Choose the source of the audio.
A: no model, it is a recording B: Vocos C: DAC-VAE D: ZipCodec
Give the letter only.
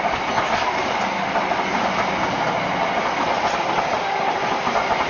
A